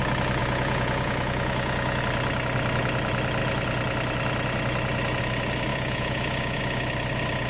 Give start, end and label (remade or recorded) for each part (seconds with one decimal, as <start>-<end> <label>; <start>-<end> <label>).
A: 0.0-0.4 recorded; 0.4-2.0 remade; 2.0-5.7 recorded; 5.7-6.6 remade; 6.6-7.5 recorded